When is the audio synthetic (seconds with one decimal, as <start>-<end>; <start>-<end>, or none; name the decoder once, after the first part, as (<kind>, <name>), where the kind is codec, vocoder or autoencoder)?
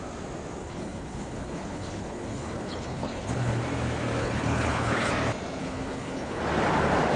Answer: 0.6-3.6 (codec, HILCodec); 4.2-5.1; 5.6-6.4